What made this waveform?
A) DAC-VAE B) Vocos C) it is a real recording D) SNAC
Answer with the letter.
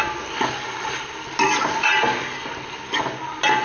C